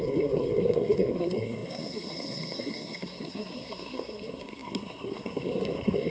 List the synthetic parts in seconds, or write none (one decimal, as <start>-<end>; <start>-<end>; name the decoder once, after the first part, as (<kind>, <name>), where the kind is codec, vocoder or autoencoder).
0.0-6.1 (codec, SNAC)

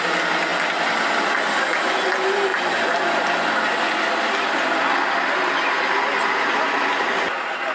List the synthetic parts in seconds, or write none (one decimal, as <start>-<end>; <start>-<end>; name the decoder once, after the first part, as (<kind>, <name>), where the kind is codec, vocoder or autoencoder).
none

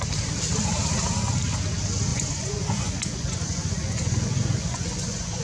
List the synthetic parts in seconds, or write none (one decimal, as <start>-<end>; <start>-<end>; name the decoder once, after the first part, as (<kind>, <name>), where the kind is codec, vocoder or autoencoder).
2.1-5.4 (vocoder, Vocos)

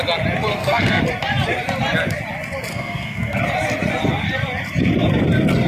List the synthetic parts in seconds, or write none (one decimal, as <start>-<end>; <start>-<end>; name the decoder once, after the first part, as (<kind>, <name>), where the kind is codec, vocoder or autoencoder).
0.5-1.0 (codec, SNAC); 2.7-3.4

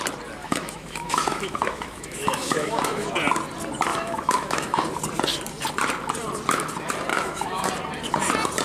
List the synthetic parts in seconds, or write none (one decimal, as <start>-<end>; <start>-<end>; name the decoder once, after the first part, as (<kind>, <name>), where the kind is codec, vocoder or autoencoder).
0.4-3.1 (autoencoder, DAC-VAE); 3.9-4.8; 7.1-7.7

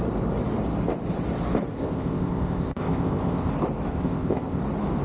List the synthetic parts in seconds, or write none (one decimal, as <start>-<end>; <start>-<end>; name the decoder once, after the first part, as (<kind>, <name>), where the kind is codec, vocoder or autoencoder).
1.7-3.5 (codec, ZipCodec); 3.9-4.6

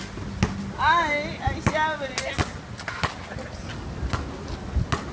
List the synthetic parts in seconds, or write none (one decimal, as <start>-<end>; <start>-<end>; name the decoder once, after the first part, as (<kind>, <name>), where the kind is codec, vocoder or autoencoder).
none

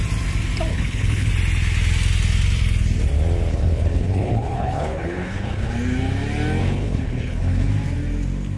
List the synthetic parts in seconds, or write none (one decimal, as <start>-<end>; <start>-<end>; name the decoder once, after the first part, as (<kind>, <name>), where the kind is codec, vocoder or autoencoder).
0.7-1.3 (codec, HILCodec); 3.5-5.7; 6.6-7.7